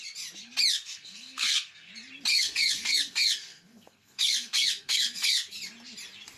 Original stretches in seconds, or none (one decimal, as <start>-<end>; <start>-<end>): 0.0-0.7; 1.9-2.3; 5.5-6.4